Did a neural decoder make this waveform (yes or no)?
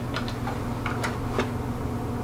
no